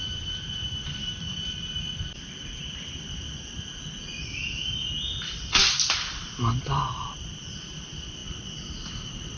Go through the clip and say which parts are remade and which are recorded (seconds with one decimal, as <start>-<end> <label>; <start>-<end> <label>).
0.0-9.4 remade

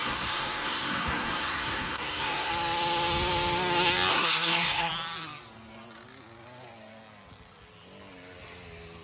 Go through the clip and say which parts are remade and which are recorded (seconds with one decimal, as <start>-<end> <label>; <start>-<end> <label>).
0.0-2.5 remade; 2.5-4.1 recorded; 4.1-4.9 remade; 4.9-9.0 recorded

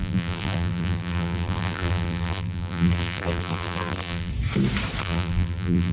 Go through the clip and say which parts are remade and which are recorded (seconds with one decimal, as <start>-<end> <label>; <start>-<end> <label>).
0.0-4.3 remade; 4.3-5.0 recorded; 5.0-5.9 remade

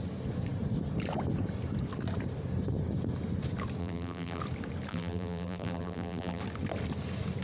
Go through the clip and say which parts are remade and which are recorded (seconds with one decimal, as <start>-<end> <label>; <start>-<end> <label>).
0.0-3.8 recorded; 3.8-4.4 remade; 4.4-4.9 recorded; 4.9-6.4 remade; 6.4-7.4 recorded